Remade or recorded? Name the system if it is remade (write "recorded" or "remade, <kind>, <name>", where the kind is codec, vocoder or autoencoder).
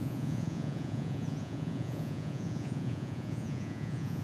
remade, vocoder, Vocos